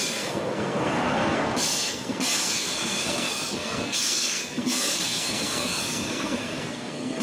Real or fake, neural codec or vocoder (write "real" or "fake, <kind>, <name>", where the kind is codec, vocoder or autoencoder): fake, codec, SNAC